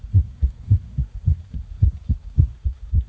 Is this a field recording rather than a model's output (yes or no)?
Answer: no